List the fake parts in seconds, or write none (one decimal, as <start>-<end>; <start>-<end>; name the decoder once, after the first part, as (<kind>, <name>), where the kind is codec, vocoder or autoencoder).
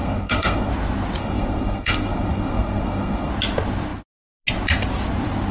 0.0-0.7 (codec, SNAC); 1.2-3.3